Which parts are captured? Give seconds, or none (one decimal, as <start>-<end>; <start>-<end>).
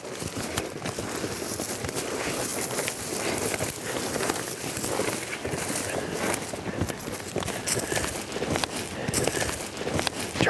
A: 0.0-10.5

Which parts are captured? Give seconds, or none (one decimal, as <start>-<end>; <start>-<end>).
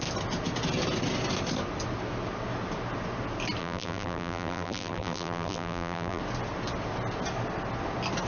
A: 0.0-3.6; 6.2-8.3